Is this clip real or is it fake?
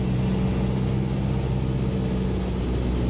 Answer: real